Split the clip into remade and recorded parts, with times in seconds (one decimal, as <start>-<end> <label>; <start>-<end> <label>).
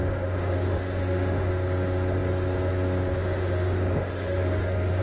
0.0-1.5 remade; 1.5-3.2 recorded; 3.2-5.0 remade